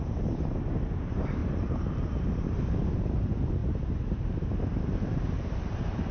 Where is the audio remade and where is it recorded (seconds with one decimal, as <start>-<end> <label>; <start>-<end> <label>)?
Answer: 0.0-6.1 remade